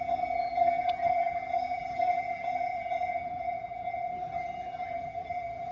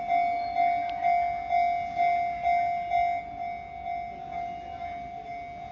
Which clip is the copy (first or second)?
first